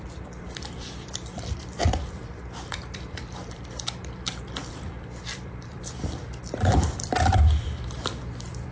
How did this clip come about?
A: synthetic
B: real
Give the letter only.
A